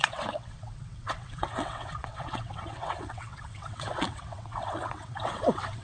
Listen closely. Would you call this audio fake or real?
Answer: fake